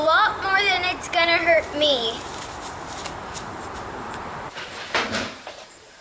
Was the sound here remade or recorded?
remade